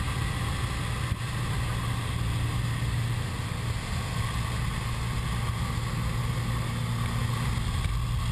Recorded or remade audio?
recorded